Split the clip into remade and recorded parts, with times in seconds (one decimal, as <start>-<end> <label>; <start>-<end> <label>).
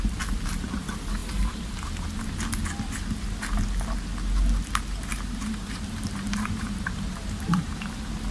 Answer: 0.0-1.2 recorded; 1.2-2.3 remade; 2.3-5.1 recorded; 5.1-7.9 remade; 7.9-8.3 recorded